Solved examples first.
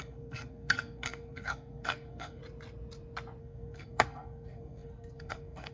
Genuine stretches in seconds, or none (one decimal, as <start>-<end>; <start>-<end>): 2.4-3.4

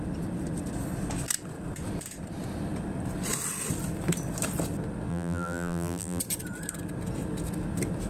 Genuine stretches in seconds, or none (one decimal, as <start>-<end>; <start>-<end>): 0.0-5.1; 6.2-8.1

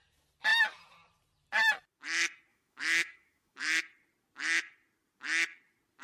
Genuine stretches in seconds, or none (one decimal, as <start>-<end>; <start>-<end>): 0.0-2.5; 3.8-6.0